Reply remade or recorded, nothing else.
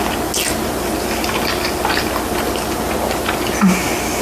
recorded